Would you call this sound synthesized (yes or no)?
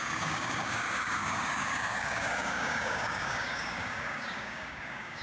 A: yes